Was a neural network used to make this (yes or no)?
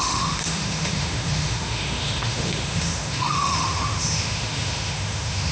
yes